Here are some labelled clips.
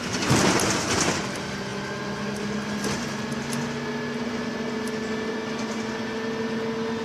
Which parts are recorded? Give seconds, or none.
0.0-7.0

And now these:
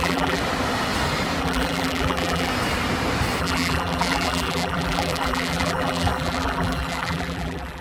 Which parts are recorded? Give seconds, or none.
0.4-1.4; 2.5-3.4